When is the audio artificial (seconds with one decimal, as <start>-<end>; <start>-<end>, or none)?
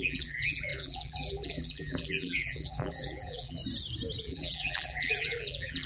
0.0-3.6; 4.2-5.9